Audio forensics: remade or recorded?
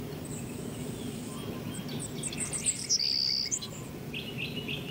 recorded